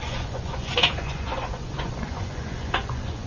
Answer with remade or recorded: remade